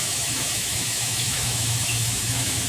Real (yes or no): no